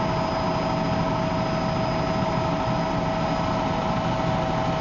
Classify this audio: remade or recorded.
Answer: recorded